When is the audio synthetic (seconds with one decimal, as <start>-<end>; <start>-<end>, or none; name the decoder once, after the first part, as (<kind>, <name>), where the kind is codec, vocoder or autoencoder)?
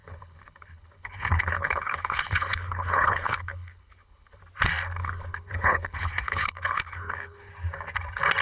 0.0-4.4 (codec, HILCodec); 5.0-7.5